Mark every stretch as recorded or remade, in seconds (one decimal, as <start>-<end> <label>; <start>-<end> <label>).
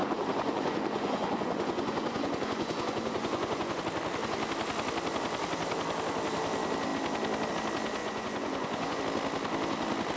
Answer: 0.0-3.8 remade; 3.8-8.0 recorded; 8.0-9.0 remade; 9.0-10.2 recorded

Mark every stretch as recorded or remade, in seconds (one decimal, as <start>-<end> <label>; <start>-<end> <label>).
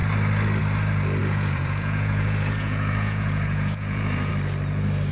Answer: 0.0-1.2 recorded; 1.2-4.3 remade; 4.3-5.1 recorded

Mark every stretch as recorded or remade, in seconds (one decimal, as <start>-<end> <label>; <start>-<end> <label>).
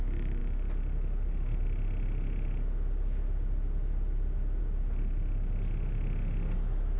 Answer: 0.0-7.0 recorded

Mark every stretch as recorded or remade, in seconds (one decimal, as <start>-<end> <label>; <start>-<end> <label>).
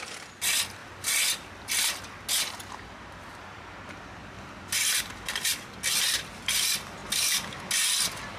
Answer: 0.0-4.2 recorded; 4.2-6.5 remade; 6.5-8.4 recorded